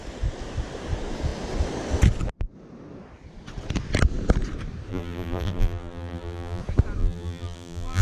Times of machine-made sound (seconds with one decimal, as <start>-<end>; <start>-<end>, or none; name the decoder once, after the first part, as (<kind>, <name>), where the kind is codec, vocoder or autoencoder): 4.9-6.6 (vocoder, BigVGAN v2); 7.0-8.0